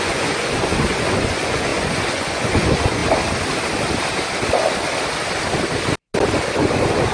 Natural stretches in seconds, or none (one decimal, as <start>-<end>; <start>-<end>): 3.0-6.3